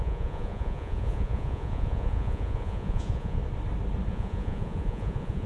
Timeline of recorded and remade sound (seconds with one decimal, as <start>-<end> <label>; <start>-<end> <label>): 0.0-3.4 remade; 3.4-4.1 recorded; 4.1-5.5 remade